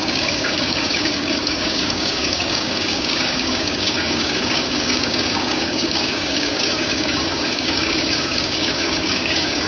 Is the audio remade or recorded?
remade